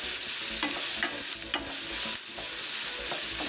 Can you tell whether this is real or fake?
real